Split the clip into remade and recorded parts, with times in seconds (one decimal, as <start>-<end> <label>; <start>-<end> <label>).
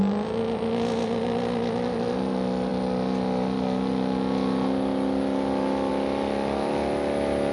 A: 0.0-7.5 recorded